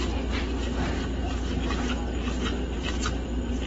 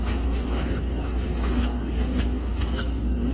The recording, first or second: first